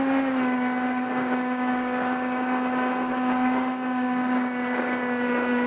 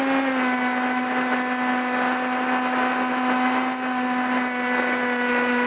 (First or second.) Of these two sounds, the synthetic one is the first